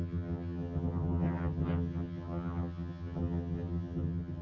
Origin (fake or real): fake